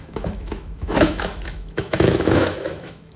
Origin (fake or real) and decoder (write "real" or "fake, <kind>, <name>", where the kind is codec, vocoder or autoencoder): fake, autoencoder, DAC-VAE